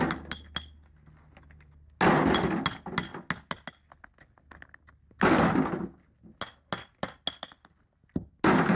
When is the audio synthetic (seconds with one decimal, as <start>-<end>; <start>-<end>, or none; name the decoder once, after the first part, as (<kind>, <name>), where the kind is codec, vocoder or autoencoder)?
none